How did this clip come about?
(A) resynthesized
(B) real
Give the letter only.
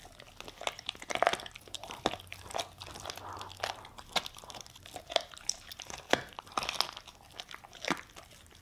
B